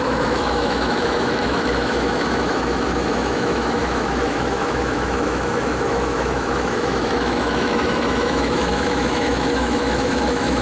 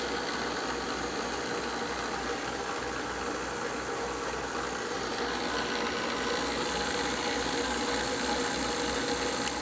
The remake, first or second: first